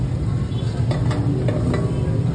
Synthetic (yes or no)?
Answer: no